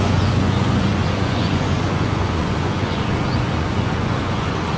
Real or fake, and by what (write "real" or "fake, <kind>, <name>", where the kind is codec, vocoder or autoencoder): fake, vocoder, Vocos